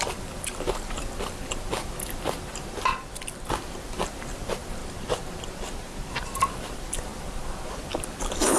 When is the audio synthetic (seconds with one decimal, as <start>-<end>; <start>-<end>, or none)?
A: 0.0-2.9; 3.5-4.8; 6.1-8.6